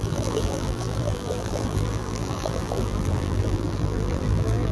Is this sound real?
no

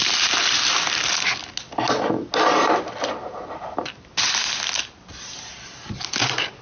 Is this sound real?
yes